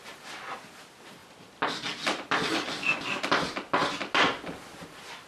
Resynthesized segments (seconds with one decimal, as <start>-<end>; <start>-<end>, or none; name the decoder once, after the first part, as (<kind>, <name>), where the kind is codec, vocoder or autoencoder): none

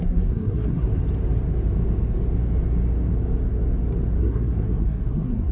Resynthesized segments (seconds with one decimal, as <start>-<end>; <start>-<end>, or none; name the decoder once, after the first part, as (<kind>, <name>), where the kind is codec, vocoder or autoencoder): 0.0-0.9 (codec, SNAC); 4.2-5.5

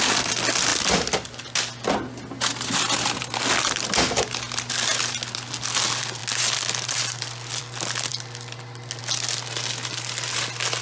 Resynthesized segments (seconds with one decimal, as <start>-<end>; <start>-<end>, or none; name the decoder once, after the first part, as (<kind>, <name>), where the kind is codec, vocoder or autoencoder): none

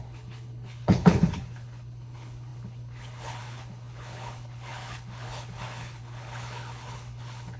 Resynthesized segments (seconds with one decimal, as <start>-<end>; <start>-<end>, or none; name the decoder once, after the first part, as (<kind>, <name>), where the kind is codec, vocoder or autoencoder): 0.0-7.6 (codec, HILCodec)

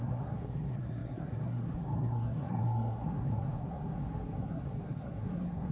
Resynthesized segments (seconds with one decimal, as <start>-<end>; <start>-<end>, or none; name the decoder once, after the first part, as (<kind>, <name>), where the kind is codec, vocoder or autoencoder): 0.0-5.7 (codec, SNAC)

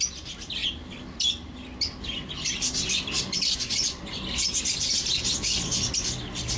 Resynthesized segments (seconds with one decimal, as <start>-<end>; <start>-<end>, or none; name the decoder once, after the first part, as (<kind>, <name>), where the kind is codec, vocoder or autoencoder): none

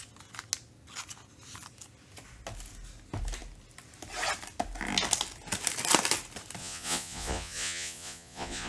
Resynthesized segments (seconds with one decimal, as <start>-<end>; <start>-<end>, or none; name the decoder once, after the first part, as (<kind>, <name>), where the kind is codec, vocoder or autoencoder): 6.6-8.7 (vocoder, Vocos)